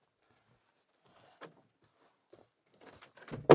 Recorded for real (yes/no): yes